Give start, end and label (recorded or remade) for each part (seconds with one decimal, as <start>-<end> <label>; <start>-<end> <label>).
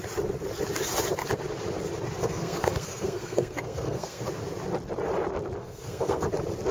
0.0-2.2 recorded; 2.2-4.2 remade; 4.2-5.6 recorded; 5.6-6.3 remade; 6.3-6.7 recorded